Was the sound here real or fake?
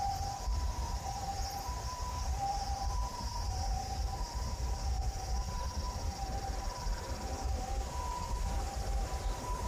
fake